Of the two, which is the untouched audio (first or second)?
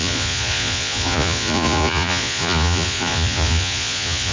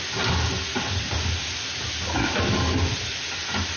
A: second